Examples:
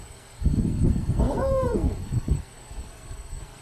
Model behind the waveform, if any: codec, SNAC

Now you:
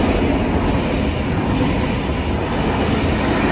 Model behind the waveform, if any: none